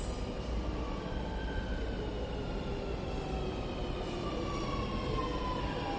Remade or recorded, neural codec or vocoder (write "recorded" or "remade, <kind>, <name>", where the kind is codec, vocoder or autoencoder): recorded